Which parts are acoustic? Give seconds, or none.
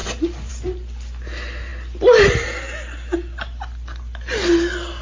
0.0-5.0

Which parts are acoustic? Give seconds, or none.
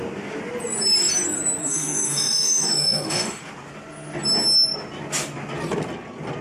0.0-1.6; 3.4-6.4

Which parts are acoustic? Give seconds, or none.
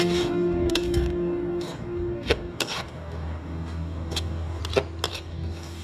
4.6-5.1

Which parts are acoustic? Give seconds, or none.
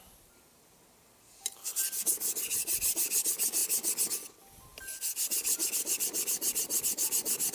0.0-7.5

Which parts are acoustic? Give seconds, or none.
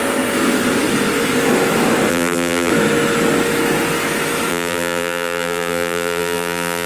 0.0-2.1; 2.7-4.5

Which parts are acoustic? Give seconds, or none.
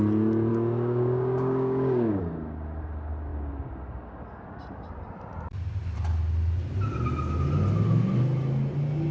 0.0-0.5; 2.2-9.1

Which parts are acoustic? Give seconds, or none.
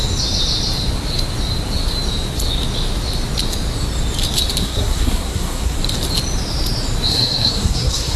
0.0-4.6; 5.8-7.1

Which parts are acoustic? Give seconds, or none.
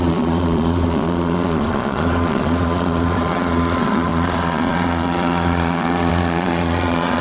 none